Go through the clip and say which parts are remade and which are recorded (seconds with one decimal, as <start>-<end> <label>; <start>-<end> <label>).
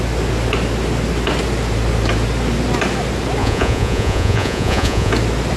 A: 0.0-3.4 recorded; 3.4-5.1 remade; 5.1-5.6 recorded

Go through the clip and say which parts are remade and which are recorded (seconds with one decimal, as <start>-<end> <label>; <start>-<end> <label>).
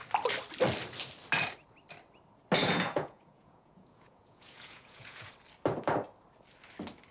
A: 0.0-2.6 recorded; 2.6-5.3 remade; 5.3-7.1 recorded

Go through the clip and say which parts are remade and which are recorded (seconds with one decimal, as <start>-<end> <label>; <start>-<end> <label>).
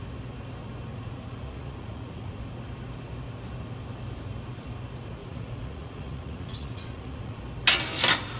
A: 0.0-0.9 recorded; 0.9-2.4 remade; 2.4-5.2 recorded; 5.2-7.4 remade; 7.4-8.4 recorded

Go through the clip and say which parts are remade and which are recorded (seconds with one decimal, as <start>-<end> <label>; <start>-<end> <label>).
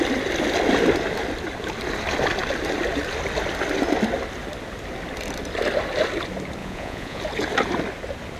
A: 0.0-6.6 recorded; 6.6-7.2 remade; 7.2-8.4 recorded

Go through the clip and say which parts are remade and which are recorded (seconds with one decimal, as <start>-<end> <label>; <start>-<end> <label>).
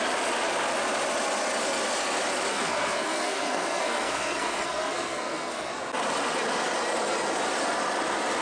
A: 0.0-2.5 recorded; 2.5-5.7 remade; 5.7-8.4 recorded